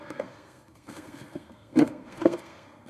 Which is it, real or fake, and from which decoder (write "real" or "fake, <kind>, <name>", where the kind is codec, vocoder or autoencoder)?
fake, codec, SNAC